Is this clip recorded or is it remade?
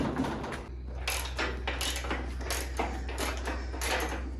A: recorded